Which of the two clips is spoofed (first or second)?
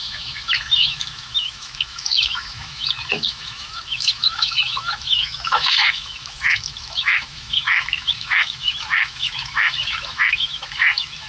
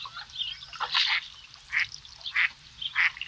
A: first